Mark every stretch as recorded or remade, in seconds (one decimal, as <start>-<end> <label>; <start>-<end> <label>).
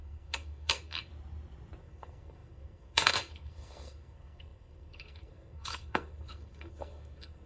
0.0-1.1 remade; 1.1-1.8 recorded; 1.8-7.5 remade